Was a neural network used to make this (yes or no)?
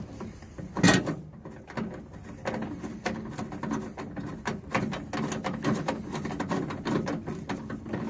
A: no